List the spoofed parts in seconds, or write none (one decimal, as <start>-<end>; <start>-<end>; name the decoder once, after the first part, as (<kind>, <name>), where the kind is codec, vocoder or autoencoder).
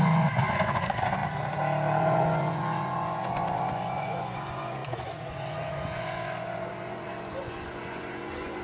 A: 0.0-1.2 (vocoder, Vocos); 2.0-8.6